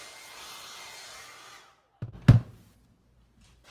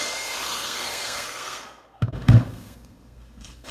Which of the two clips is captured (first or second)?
first